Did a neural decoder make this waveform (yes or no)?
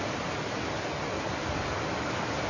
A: no